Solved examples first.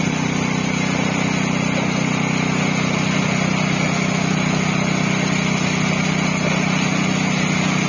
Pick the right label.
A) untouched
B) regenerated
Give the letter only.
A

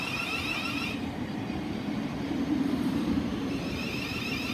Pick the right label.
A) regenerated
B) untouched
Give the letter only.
A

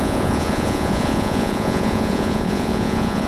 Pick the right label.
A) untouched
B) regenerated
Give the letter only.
B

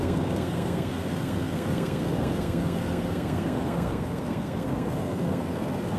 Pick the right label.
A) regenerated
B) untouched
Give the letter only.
A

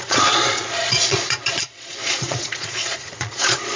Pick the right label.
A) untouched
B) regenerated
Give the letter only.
B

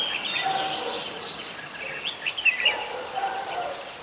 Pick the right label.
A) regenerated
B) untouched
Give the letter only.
B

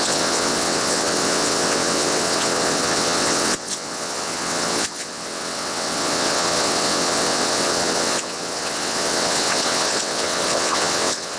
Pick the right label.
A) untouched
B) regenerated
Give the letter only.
B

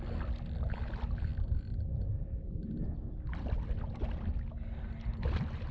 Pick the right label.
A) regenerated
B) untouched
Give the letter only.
B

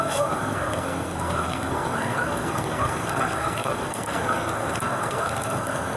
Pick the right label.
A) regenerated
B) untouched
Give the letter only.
A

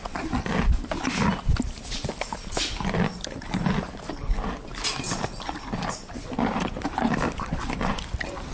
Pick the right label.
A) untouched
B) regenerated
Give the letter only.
A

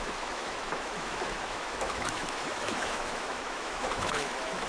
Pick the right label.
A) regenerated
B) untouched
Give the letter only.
A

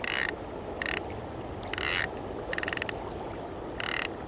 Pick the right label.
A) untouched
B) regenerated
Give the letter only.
A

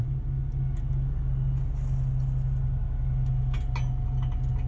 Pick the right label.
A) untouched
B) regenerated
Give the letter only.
A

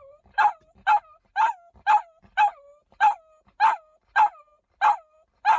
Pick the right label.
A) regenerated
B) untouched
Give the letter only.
B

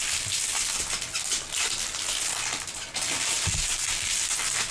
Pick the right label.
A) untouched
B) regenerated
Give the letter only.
A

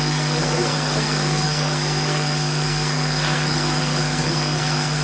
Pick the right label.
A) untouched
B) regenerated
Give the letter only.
B